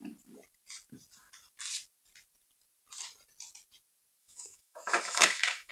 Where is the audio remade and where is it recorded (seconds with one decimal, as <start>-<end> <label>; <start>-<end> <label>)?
0.0-4.2 recorded; 4.2-5.7 remade